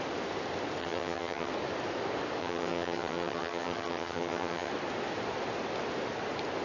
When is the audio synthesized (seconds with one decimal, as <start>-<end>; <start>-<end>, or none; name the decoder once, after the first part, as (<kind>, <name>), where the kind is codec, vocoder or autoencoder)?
0.8-1.5 (vocoder, HiFi-GAN); 2.4-4.7